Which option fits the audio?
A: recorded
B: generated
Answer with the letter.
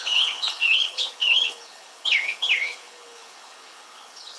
B